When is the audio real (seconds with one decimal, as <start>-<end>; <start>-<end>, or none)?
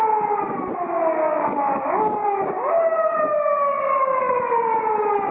0.0-1.2; 4.4-5.3